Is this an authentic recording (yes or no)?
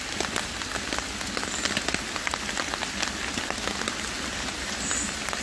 yes